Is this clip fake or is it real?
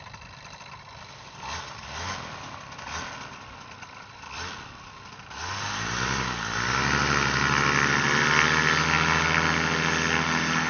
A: real